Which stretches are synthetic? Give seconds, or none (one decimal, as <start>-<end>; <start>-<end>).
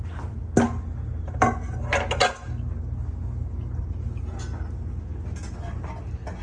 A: none